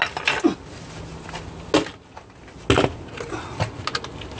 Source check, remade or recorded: recorded